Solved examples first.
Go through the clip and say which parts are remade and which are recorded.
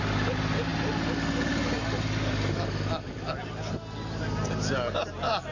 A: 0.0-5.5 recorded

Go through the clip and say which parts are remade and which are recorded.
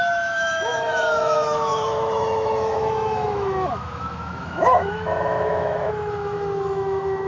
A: 0.0-7.3 remade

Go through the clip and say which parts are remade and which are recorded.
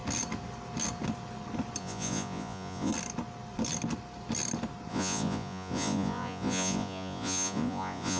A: 0.0-1.8 recorded; 1.8-2.9 remade; 2.9-4.9 recorded; 4.9-8.2 remade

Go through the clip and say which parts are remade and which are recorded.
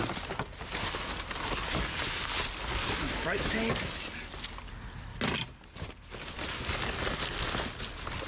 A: 0.0-2.8 recorded; 2.8-3.6 remade; 3.6-8.3 recorded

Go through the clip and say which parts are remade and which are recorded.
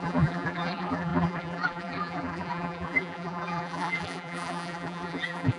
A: 0.0-5.6 remade